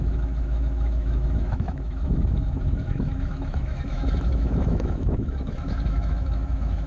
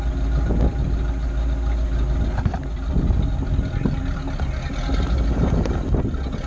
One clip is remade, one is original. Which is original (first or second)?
second